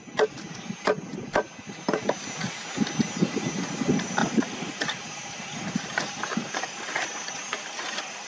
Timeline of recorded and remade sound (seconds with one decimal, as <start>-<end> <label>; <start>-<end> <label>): 0.0-4.2 recorded; 4.2-4.8 remade; 4.8-8.3 recorded